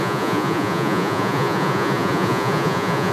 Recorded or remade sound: remade